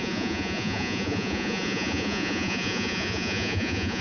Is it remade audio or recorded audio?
remade